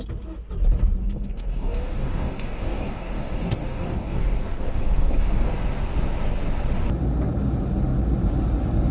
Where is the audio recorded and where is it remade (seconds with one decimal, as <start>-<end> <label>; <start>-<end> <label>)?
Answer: 0.0-1.0 recorded; 1.0-5.5 remade; 5.5-8.9 recorded